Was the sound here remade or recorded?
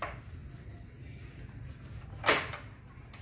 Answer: recorded